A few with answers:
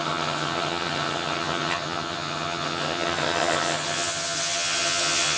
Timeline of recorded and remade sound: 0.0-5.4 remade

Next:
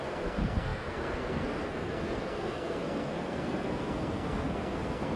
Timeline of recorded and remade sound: 0.0-5.2 remade

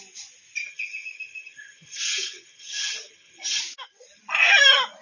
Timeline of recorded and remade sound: 0.0-0.6 recorded; 0.6-3.6 remade; 3.6-5.0 recorded